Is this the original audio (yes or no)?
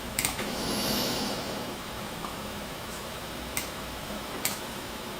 no